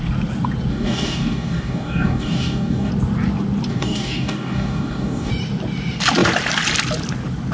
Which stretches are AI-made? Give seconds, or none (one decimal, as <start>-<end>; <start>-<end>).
0.7-2.9; 3.7-5.3